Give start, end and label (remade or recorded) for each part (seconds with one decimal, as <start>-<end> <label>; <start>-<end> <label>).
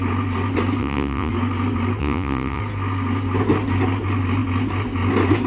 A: 0.0-0.8 recorded; 0.8-1.3 remade; 1.3-2.0 recorded; 2.0-2.6 remade; 2.6-5.5 recorded